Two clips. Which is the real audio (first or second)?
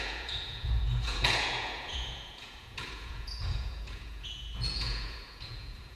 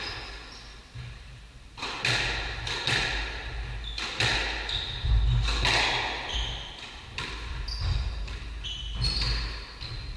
second